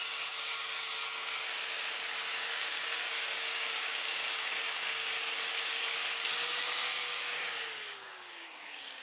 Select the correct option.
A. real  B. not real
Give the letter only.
B